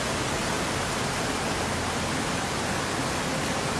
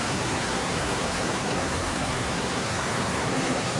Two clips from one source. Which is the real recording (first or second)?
first